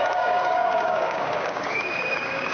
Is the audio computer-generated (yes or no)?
yes